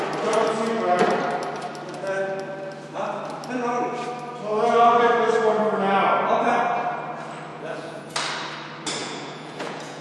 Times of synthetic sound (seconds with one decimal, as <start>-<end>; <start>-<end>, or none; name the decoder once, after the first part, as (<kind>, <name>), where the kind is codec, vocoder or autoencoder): 7.5-8.1 (vocoder, Vocos); 9.0-10.0